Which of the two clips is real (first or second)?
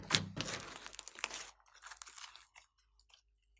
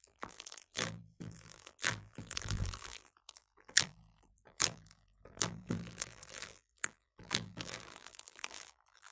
first